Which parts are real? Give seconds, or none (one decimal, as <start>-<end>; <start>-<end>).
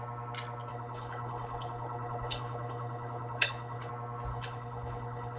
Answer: 0.0-0.7; 3.9-4.3